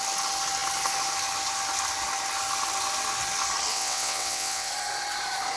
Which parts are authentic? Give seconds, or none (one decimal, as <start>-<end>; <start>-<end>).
0.0-3.7; 4.7-5.6